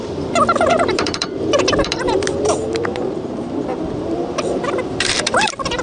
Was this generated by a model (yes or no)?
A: yes